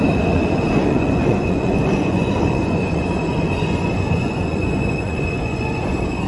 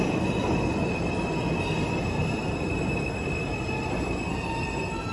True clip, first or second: second